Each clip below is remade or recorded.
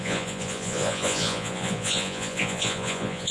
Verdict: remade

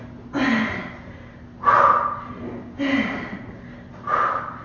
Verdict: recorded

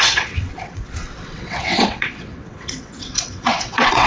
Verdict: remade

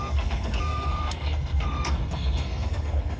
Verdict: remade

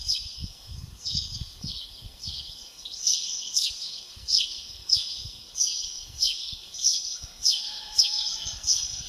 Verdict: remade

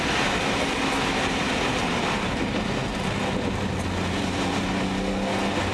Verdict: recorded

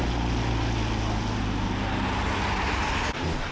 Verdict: recorded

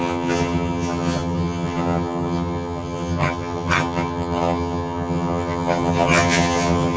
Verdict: remade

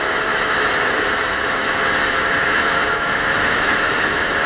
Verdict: remade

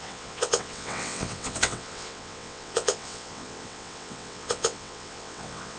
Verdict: remade